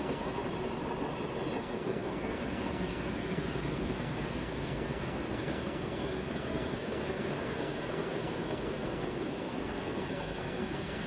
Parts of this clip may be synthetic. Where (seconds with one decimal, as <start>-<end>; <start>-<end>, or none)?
0.0-0.4; 1.6-11.1